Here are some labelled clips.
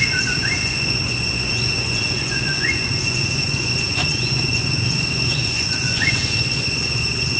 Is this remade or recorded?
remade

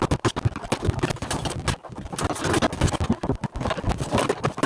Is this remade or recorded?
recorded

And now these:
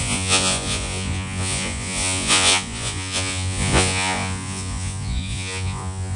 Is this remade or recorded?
remade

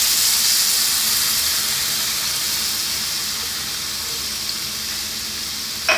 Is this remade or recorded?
recorded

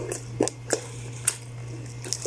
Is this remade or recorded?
recorded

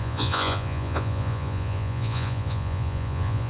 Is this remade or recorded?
remade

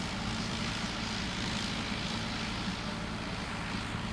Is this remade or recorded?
recorded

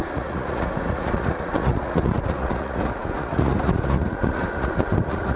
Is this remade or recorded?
remade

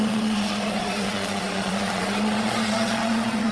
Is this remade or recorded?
remade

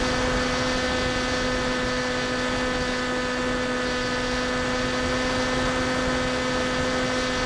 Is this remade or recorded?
recorded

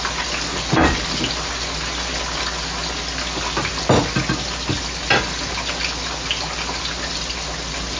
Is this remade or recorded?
recorded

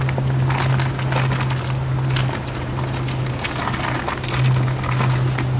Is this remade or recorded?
recorded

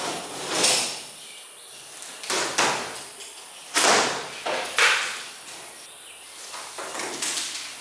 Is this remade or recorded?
recorded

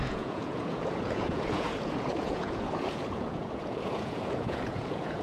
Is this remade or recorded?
remade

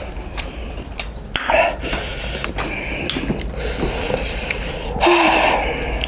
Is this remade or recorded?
recorded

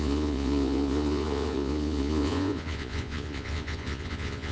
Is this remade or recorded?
remade